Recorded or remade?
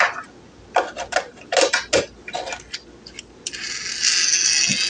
recorded